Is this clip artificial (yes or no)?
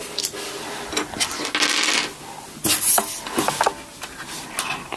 no